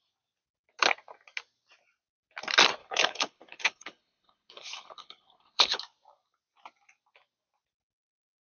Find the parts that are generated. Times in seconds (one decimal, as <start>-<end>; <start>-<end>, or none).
2.8-5.8